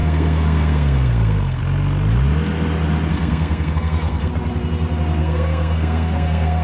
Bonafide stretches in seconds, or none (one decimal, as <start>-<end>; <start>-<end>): 1.6-3.1; 4.3-5.2